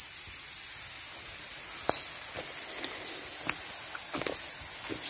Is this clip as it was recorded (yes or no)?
yes